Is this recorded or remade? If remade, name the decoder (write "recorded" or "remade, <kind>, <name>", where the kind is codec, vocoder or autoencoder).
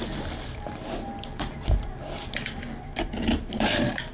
recorded